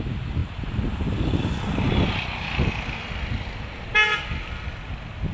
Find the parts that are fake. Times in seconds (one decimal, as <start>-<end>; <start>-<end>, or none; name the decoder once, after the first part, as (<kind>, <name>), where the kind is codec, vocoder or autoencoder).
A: none